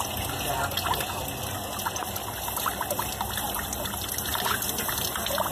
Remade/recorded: recorded